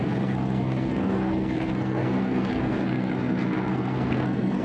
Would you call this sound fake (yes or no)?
yes